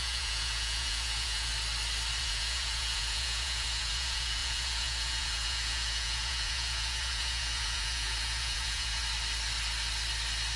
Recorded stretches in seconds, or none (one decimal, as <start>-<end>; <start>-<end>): 1.5-2.2; 9.0-10.6